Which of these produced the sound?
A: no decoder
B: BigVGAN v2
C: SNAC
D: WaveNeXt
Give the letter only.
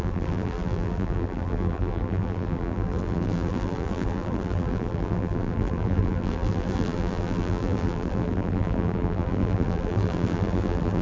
B